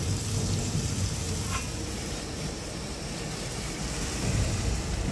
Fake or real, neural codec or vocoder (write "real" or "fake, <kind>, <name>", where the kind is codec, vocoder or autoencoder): fake, vocoder, BigVGAN v2